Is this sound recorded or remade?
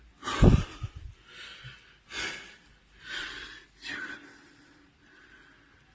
recorded